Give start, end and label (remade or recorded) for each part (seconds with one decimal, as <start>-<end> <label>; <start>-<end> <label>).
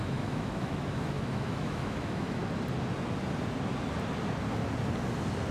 0.0-2.4 remade; 2.4-5.5 recorded